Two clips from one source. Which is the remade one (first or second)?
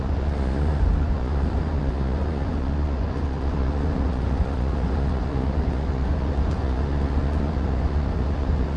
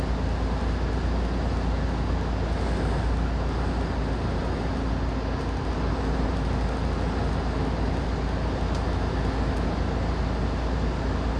first